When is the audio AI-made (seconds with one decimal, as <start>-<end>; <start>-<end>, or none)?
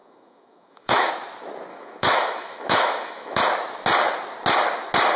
0.0-1.1; 1.7-3.4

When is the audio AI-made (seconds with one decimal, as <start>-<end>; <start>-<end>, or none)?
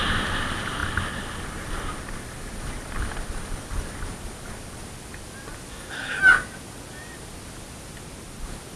5.7-6.2